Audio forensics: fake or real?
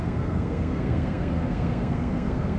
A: fake